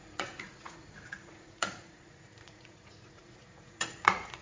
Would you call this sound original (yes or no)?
no